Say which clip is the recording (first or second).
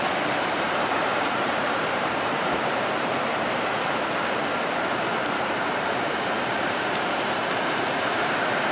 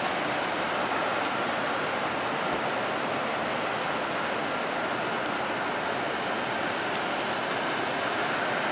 second